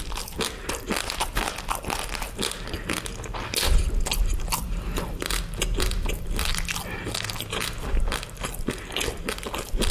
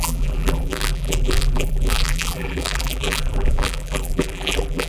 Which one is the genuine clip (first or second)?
first